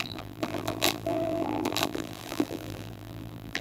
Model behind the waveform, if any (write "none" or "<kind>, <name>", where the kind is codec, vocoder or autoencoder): vocoder, BigVGAN v2